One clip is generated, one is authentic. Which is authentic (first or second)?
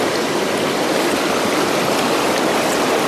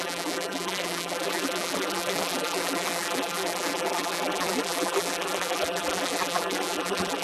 first